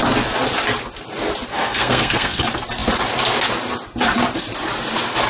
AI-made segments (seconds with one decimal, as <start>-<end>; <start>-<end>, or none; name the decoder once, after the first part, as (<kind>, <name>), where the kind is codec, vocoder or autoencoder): 1.5-2.4 (codec, SNAC)